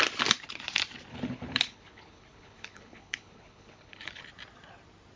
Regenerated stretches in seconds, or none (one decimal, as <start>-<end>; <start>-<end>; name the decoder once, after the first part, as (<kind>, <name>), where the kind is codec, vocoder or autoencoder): 1.1-4.2 (codec, HILCodec)